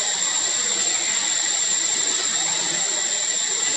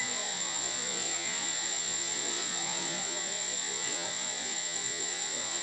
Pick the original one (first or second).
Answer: first